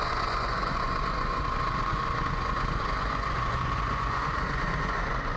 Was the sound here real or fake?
fake